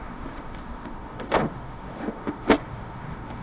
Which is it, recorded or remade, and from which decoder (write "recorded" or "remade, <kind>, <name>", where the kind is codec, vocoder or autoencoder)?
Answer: remade, autoencoder, DAC-VAE